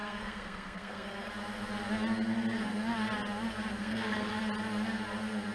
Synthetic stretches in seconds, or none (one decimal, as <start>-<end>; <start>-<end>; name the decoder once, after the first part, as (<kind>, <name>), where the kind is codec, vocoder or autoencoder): 0.0-1.3 (codec, SNAC); 3.8-4.4